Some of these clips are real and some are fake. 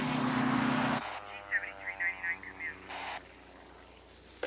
real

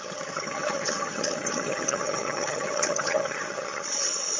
fake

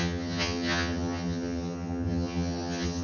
fake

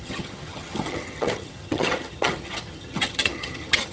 fake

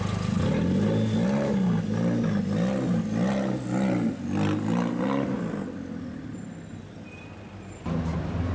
real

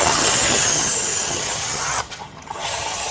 fake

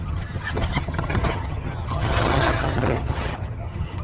fake